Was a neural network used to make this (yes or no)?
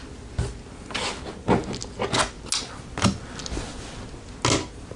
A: no